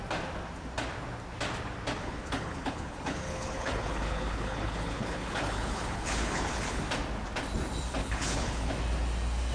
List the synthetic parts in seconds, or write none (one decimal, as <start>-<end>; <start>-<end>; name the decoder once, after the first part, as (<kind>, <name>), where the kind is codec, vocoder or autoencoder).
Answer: 2.0-6.8 (codec, HILCodec); 8.0-8.7